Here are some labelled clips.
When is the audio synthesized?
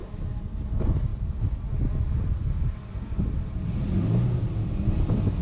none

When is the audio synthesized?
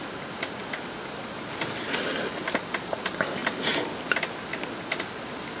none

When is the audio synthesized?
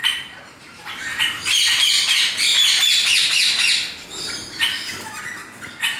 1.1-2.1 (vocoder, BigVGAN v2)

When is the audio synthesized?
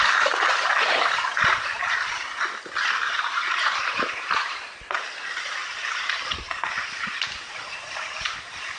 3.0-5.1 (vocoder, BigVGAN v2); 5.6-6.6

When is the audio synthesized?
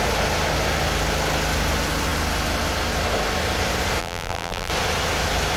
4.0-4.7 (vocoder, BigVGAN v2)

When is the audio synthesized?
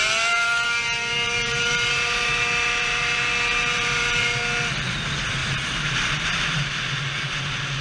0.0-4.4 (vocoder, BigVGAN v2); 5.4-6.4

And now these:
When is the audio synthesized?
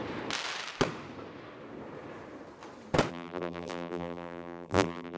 3.1-5.2 (vocoder, BigVGAN v2)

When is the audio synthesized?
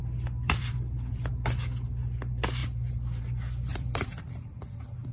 0.0-1.3 (vocoder, BigVGAN v2); 3.7-5.1